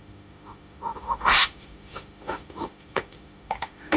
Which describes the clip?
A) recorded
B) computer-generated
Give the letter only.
B